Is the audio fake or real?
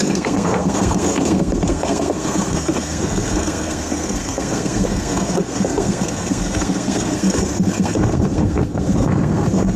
fake